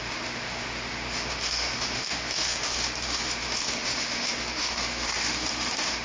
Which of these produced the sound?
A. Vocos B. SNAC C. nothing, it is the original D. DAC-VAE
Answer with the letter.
D